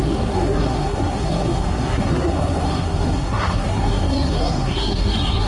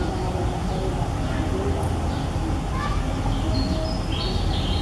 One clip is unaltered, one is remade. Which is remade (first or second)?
first